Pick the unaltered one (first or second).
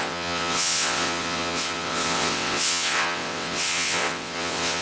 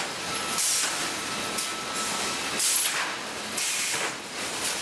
second